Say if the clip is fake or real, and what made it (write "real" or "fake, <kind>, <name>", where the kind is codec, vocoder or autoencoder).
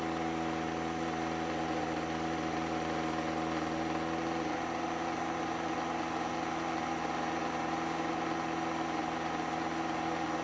real